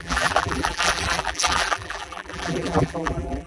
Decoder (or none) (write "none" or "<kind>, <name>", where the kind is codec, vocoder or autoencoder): vocoder, BigVGAN v2